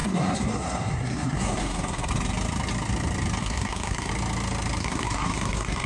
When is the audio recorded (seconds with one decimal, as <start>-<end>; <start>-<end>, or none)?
2.1-3.4; 4.1-4.8